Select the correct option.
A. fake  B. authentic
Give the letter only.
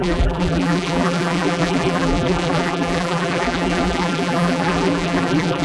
A